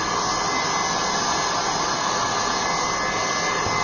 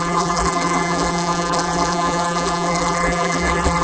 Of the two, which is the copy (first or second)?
second